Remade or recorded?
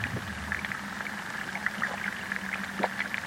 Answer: recorded